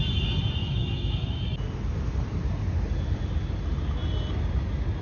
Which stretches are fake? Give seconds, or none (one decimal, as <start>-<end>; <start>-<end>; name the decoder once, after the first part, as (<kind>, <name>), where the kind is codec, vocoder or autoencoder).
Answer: 0.6-1.4 (autoencoder, DAC-VAE)